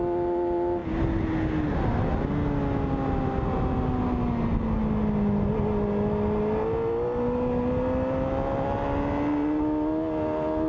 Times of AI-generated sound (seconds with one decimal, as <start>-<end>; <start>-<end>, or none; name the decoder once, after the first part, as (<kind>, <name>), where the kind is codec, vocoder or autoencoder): none